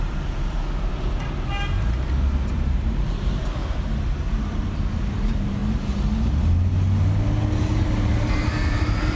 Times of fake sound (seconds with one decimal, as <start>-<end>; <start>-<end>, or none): 0.0-0.9; 2.5-3.6; 4.3-5.6; 7.6-9.2